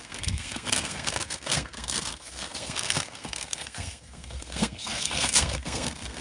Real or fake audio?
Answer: fake